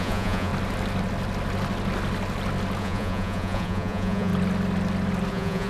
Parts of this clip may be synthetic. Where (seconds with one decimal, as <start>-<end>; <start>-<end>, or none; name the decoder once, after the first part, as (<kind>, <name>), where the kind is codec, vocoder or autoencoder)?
0.0-0.5 (vocoder, Vocos); 2.8-4.3; 5.3-5.7